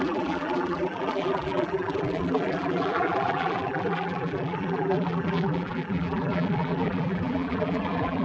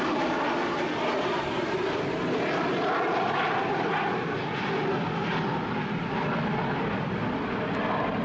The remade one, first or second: first